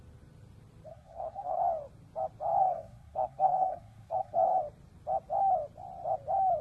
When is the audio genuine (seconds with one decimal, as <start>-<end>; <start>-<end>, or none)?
0.0-0.9; 1.6-2.6; 4.6-6.6